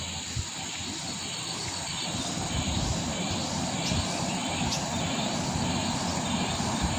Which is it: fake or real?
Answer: real